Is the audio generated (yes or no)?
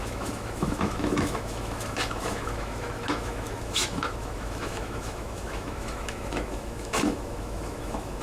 yes